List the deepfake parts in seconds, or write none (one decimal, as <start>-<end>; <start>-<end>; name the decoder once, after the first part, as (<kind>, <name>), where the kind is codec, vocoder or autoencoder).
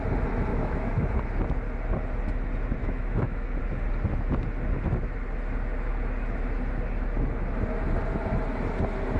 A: 0.5-1.1 (autoencoder, DAC-VAE); 2.8-3.6